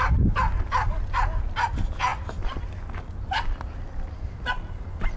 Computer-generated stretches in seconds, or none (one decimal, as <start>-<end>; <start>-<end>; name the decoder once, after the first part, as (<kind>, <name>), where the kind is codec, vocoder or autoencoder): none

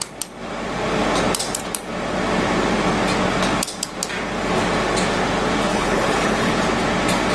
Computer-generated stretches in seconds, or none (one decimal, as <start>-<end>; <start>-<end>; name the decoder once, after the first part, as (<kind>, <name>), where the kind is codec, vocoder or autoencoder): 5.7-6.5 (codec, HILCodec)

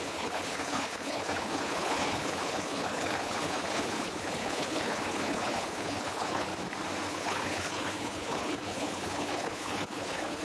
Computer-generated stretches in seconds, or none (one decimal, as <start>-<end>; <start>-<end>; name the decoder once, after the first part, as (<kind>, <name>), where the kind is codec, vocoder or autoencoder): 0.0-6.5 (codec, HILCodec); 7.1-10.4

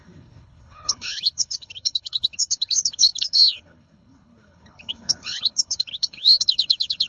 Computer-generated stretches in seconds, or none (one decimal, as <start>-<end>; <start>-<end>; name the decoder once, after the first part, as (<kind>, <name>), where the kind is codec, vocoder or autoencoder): 0.0-7.1 (codec, HILCodec)